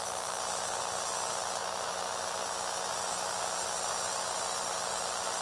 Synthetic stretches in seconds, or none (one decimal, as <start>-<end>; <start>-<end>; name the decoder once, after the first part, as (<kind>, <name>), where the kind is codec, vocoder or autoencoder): none